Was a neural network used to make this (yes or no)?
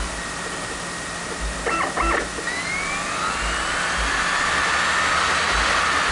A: no